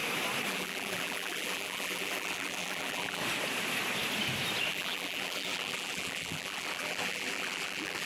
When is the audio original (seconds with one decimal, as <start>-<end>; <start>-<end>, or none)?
0.0-0.5; 3.2-4.7